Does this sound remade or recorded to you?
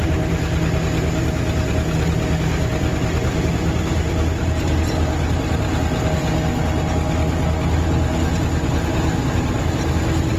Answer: recorded